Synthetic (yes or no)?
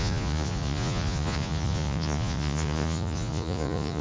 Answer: yes